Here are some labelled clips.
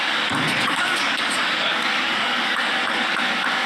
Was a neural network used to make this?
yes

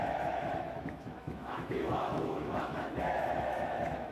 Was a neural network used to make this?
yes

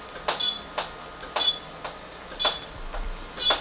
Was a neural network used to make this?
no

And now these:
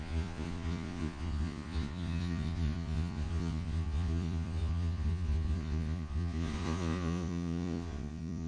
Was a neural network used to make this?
yes